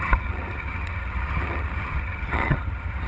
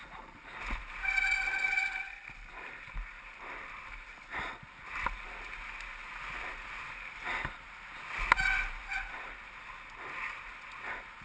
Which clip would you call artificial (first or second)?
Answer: first